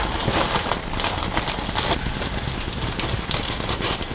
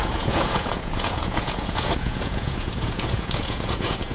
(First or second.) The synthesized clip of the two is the second